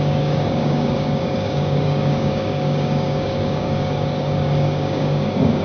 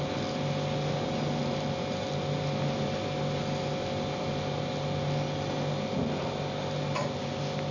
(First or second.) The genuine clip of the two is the second